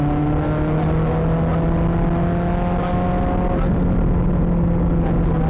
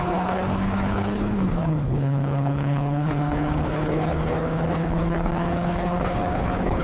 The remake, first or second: second